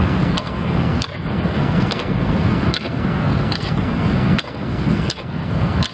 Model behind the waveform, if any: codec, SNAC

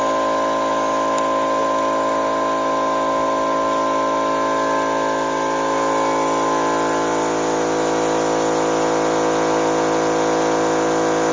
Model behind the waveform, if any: none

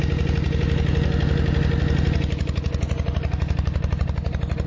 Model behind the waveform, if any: none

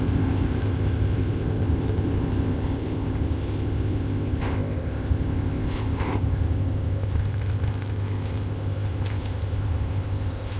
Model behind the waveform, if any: codec, ZipCodec